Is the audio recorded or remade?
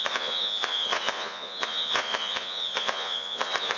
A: remade